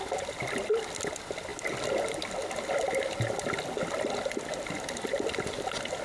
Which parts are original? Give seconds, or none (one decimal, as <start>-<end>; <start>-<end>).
0.0-6.0